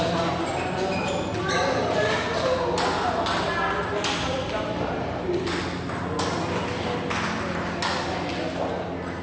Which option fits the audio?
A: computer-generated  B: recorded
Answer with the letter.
B